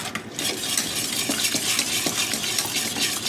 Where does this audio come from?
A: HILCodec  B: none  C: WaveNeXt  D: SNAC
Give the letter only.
B